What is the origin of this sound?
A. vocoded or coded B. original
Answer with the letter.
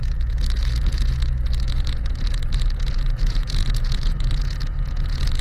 A